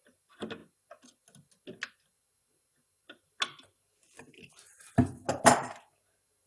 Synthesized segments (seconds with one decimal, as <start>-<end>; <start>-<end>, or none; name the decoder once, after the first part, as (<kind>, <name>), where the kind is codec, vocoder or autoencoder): none